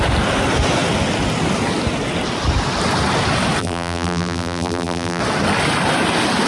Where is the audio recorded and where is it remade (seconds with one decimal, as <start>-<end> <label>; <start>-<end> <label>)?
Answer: 0.0-3.6 recorded; 3.6-5.2 remade; 5.2-6.5 recorded